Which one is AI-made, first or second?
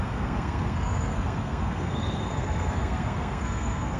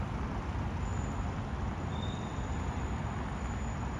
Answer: first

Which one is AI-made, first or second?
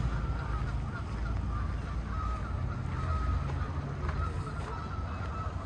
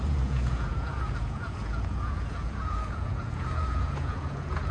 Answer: second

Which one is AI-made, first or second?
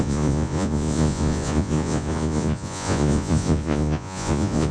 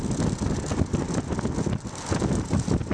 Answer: first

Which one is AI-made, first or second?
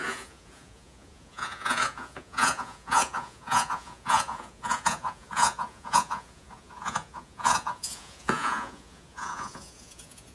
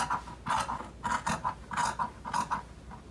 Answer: first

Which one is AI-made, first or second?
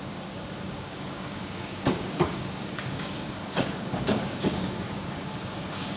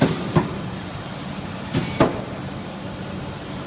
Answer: first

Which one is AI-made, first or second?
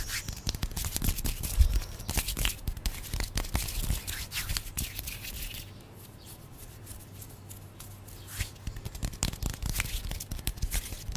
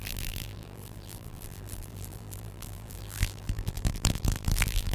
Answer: second